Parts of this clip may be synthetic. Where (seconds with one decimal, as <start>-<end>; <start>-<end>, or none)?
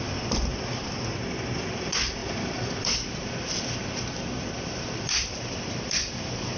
0.0-0.5; 1.7-6.6